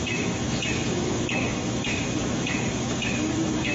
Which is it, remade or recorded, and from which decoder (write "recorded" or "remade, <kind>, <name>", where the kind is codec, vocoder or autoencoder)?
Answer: remade, autoencoder, DAC-VAE